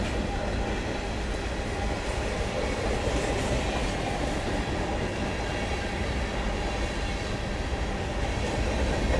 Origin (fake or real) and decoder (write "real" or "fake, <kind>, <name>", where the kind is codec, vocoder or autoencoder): real